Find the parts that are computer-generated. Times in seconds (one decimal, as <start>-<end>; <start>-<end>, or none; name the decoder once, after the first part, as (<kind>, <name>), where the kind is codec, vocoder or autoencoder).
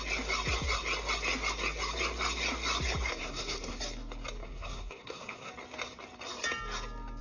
3.2-3.8 (codec, SNAC); 4.4-5.5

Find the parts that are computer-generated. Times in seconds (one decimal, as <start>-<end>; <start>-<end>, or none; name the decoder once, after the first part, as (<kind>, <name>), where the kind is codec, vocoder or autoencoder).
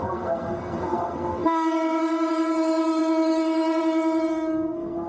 0.0-5.1 (codec, SNAC)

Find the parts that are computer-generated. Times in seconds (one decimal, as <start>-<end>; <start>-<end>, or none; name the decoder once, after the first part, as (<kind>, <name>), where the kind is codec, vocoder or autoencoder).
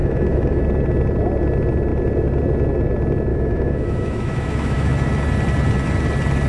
0.0-0.6 (autoencoder, DAC-VAE); 3.3-4.9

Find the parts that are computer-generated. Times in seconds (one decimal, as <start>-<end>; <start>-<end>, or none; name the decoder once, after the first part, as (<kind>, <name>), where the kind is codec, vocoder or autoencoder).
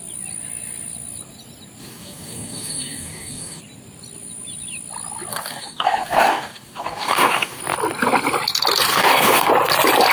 1.8-3.6 (codec, DAC); 5.3-7.6; 8.9-9.5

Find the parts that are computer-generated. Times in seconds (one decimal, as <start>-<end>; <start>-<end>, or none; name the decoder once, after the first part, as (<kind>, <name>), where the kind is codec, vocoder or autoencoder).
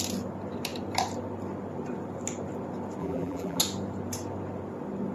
3.0-3.6 (vocoder, BigVGAN v2)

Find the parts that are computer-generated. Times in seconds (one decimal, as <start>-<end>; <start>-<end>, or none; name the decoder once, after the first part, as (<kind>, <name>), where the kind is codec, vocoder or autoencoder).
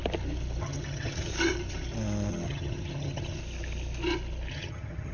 0.6-1.3 (vocoder, HiFi-GAN); 2.3-3.4; 4.5-5.1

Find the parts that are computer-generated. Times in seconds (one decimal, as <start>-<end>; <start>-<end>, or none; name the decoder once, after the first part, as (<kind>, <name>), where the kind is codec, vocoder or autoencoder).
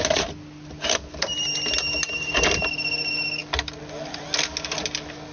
none